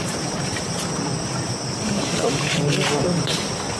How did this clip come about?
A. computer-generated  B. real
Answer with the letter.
B